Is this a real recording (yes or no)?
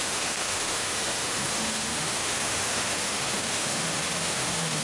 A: no